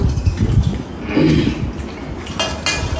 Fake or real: real